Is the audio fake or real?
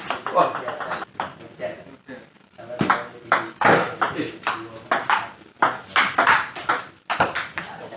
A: real